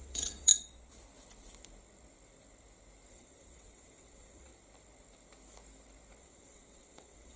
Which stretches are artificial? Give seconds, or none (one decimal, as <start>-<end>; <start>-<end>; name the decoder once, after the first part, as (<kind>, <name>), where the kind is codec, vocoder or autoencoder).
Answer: 0.0-0.5 (vocoder, WaveNeXt); 3.1-4.5; 6.2-7.4